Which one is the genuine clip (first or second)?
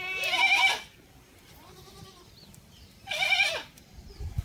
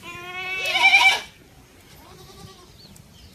second